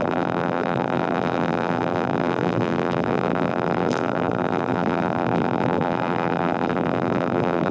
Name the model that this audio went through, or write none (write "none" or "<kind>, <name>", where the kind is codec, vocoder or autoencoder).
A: vocoder, BigVGAN v2